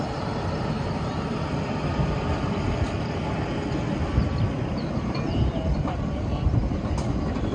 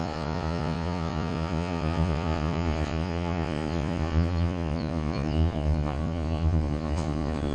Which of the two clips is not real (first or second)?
second